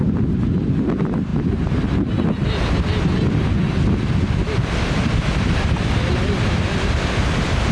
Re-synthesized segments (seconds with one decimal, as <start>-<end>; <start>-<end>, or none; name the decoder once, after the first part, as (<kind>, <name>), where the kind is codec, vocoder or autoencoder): none